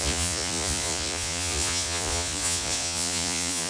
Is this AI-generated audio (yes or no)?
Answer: yes